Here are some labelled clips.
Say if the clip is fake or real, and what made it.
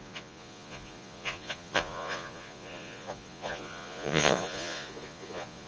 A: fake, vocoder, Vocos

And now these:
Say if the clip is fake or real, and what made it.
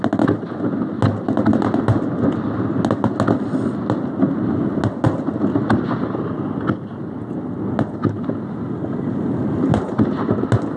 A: real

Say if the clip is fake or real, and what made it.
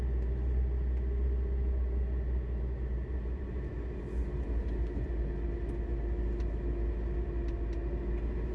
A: real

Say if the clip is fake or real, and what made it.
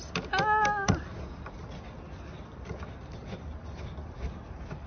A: real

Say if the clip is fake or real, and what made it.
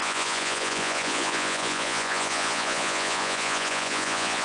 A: fake, vocoder, Vocos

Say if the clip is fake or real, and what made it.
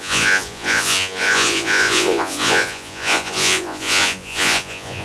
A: fake, vocoder, Vocos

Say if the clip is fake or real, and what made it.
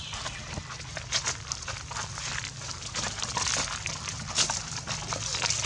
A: real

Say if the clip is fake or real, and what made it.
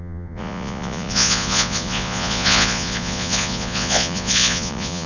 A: fake, vocoder, Vocos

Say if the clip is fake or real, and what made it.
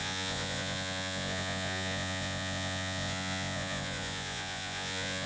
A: fake, vocoder, Vocos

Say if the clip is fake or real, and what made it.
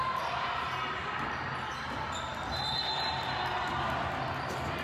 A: real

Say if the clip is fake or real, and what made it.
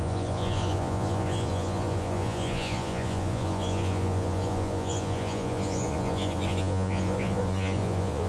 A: fake, vocoder, Vocos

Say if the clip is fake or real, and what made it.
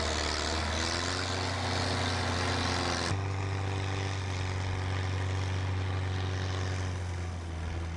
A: real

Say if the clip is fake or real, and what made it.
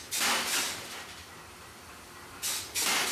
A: real